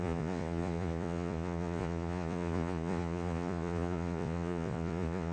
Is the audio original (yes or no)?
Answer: no